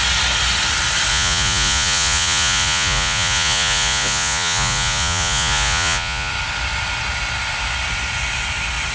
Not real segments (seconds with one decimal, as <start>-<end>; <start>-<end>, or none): 1.1-6.3